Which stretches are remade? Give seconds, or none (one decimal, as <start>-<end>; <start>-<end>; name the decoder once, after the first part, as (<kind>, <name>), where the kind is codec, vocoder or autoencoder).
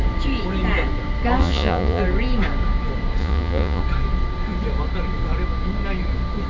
1.4-2.0 (vocoder, Vocos); 3.2-3.8